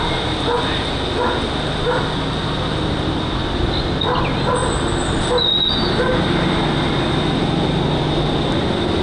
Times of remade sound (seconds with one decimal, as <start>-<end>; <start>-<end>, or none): none